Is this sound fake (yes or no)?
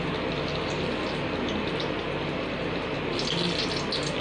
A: no